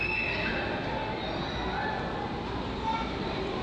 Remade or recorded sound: recorded